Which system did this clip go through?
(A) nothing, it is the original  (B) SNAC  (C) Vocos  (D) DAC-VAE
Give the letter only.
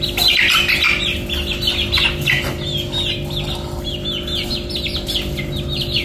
A